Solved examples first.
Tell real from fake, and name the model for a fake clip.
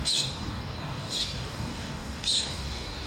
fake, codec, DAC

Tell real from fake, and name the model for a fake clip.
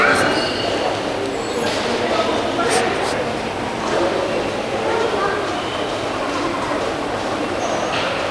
real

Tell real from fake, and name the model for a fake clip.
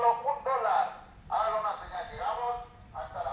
real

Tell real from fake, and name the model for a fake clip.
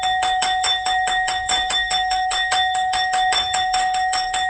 fake, codec, DAC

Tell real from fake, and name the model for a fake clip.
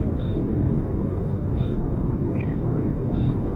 fake, codec, DAC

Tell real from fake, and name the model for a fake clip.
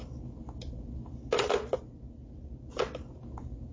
real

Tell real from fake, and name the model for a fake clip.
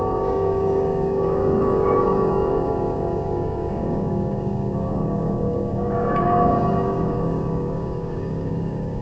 fake, codec, DAC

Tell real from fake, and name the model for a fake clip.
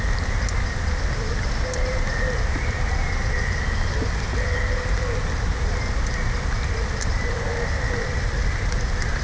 real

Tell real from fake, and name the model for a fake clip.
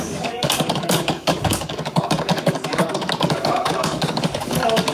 fake, codec, DAC